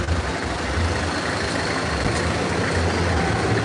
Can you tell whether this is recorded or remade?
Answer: recorded